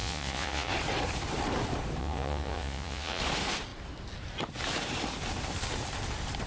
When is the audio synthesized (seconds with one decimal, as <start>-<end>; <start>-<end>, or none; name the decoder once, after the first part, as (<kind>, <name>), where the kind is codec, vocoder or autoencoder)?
0.0-0.7 (vocoder, Vocos); 2.0-3.2